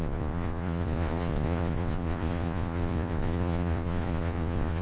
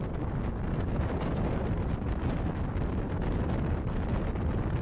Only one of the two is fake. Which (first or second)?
first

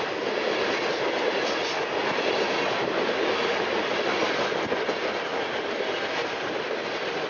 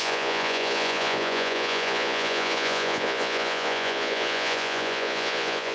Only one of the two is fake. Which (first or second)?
second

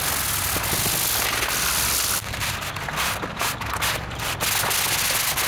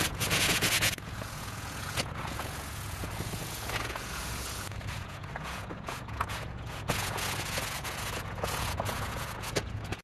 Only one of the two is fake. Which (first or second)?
second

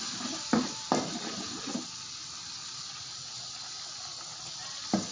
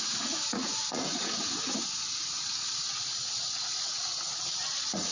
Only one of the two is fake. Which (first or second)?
second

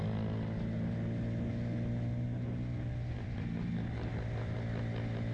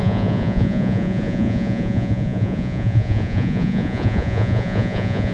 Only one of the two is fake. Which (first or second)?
second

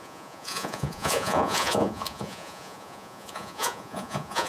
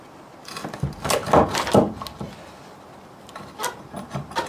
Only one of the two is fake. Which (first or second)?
first